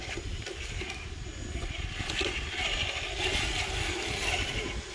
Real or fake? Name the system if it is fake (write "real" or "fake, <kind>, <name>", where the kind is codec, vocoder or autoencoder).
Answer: real